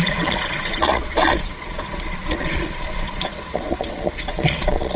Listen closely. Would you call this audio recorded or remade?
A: remade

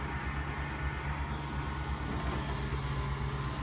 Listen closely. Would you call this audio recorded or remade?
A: recorded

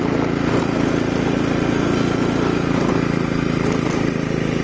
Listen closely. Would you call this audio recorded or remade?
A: recorded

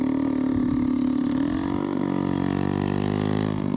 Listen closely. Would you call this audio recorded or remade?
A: recorded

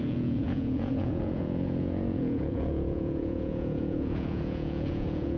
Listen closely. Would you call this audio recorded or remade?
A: remade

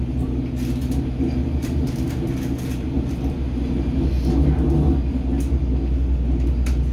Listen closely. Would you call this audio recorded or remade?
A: recorded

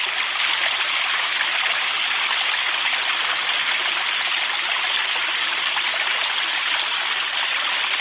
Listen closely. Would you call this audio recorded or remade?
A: recorded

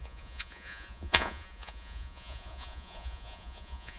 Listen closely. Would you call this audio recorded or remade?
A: remade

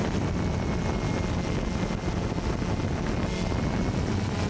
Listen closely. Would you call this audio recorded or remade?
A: recorded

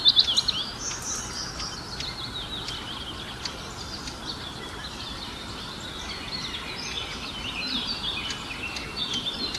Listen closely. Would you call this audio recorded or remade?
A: recorded